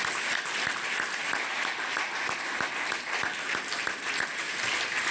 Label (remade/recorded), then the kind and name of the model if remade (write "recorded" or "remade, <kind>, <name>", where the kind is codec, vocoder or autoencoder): recorded